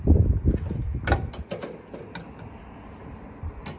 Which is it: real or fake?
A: real